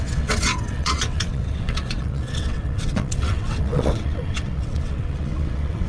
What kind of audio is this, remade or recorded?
remade